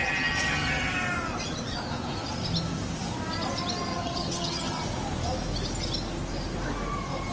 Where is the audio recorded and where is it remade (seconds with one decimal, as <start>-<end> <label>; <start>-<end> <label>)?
0.0-0.9 remade; 0.9-3.9 recorded; 3.9-4.8 remade; 4.8-7.3 recorded